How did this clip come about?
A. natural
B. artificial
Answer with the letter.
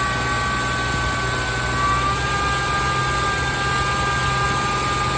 A